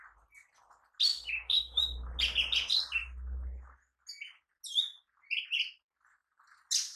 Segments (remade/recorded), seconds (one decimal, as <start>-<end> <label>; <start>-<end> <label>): 0.0-1.1 recorded; 1.1-1.8 remade; 1.8-7.0 recorded